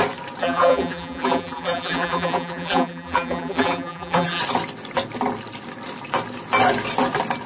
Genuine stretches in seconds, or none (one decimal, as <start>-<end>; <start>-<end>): 0.0-0.4; 4.4-7.5